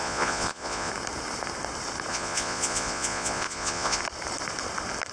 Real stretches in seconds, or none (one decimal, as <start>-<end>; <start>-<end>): 0.9-2.1; 4.0-5.1